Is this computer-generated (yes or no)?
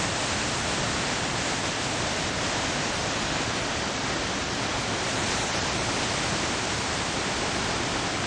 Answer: no